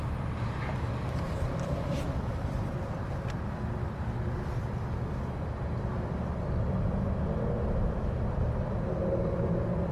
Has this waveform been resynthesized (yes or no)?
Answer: no